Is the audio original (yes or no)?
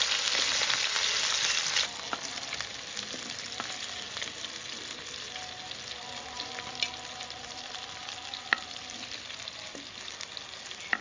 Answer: yes